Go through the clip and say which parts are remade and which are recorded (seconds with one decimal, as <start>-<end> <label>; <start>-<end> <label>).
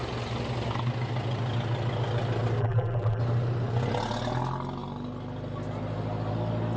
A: 0.0-2.6 recorded; 2.6-3.2 remade; 3.2-6.8 recorded